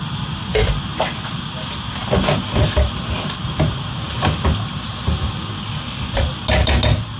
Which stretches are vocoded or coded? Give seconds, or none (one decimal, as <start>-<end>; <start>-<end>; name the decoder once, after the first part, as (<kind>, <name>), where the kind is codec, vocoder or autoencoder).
none